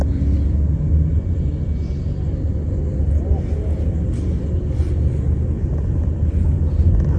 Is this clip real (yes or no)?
yes